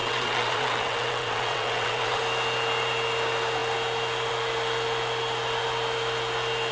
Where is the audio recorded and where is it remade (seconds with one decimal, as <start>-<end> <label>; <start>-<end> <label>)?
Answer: 0.0-2.2 remade; 2.2-6.7 recorded